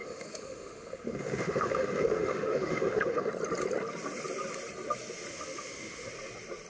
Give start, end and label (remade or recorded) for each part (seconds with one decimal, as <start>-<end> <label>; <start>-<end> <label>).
0.0-3.3 remade; 3.3-5.3 recorded; 5.3-6.1 remade; 6.1-6.7 recorded